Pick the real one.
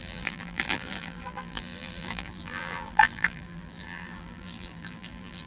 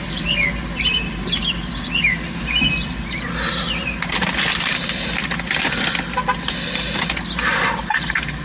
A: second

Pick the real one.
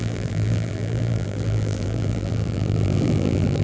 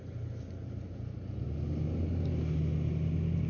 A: second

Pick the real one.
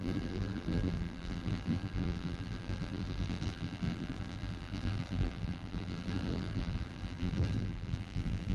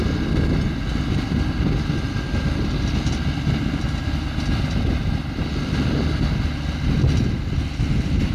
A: second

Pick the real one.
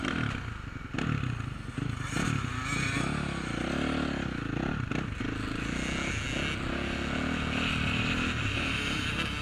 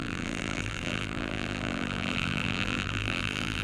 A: first